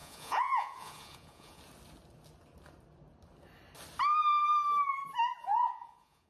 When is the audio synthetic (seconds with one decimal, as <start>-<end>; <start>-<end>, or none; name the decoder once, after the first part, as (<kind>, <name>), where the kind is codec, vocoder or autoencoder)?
0.0-1.6 (vocoder, Vocos); 5.4-6.3

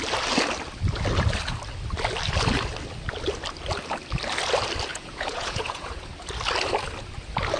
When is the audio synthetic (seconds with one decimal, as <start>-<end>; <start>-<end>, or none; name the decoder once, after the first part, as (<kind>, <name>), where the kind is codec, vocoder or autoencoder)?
4.9-6.1 (vocoder, Vocos)

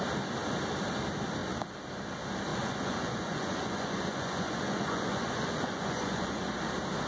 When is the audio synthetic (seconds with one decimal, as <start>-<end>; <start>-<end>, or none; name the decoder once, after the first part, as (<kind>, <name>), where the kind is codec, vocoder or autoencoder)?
2.5-6.5 (vocoder, Vocos)

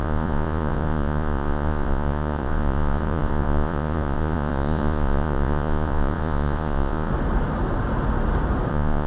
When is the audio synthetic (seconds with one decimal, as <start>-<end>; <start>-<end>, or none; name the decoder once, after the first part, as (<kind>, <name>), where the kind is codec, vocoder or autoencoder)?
0.0-7.1 (vocoder, Vocos); 8.7-9.1

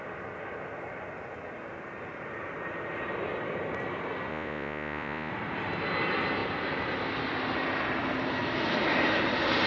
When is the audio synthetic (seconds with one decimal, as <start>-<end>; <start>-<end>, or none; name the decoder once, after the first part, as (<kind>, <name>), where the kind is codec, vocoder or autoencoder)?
4.3-5.3 (vocoder, Vocos)

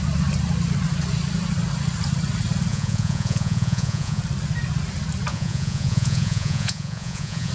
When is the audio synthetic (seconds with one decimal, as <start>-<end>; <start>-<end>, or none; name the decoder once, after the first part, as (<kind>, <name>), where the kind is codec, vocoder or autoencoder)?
2.7-4.2 (vocoder, Vocos); 5.3-7.5